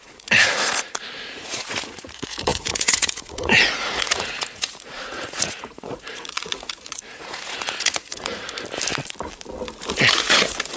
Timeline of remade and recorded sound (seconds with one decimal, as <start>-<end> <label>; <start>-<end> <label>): 0.0-8.3 remade; 8.3-9.9 recorded; 9.9-10.8 remade